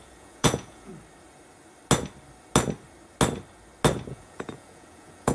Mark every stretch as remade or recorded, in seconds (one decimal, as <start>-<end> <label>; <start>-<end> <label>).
0.0-0.9 remade; 0.9-4.1 recorded; 4.1-5.3 remade